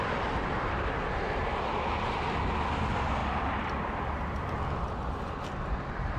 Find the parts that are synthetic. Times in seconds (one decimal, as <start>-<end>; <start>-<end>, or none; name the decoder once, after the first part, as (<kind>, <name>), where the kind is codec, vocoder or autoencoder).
1.4-2.1 (vocoder, BigVGAN v2); 3.2-4.6

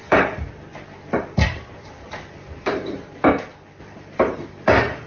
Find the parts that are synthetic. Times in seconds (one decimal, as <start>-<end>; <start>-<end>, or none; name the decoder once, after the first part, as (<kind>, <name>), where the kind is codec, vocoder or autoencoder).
0.0-3.3 (vocoder, BigVGAN v2); 3.8-5.1

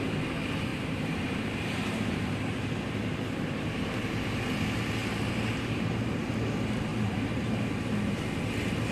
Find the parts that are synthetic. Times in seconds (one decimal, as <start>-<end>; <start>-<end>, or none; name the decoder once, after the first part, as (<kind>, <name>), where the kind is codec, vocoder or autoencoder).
0.7-4.2 (vocoder, BigVGAN v2); 5.0-6.3; 6.9-7.7

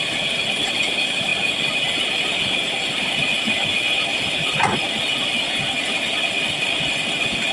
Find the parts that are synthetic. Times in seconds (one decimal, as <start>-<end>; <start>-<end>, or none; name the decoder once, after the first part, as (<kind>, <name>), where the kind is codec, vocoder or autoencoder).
none

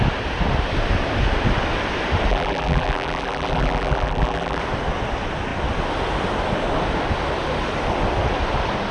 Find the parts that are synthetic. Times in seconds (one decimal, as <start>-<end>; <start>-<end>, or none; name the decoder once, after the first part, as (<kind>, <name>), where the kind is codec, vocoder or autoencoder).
2.3-4.6 (vocoder, BigVGAN v2)

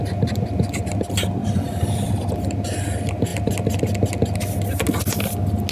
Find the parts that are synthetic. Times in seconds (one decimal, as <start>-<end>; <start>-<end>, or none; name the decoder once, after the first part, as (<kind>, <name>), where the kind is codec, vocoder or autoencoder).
1.4-2.1 (vocoder, BigVGAN v2)

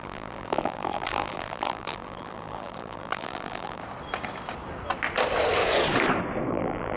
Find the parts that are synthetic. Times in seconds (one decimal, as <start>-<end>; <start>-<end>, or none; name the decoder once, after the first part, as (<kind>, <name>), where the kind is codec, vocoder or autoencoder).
0.0-3.8 (vocoder, BigVGAN v2); 6.5-7.0

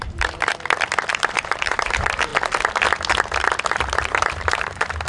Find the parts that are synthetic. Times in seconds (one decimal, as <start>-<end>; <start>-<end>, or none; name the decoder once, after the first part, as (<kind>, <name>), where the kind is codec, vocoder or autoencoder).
0.0-0.5 (vocoder, BigVGAN v2); 1.1-2.3; 3.7-5.1